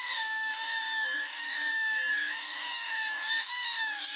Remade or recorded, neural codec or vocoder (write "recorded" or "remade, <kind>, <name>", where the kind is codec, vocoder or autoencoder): remade, codec, DAC